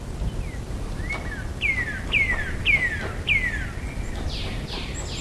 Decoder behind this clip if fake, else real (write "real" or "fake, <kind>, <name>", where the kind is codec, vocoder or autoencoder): real